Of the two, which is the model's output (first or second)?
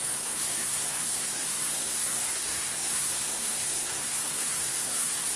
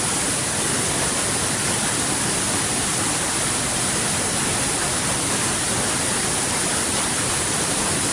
first